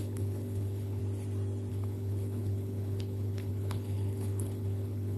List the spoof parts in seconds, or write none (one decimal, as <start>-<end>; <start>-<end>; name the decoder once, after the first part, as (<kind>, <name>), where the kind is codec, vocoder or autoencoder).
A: 0.0-1.0 (codec, HILCodec); 1.7-5.2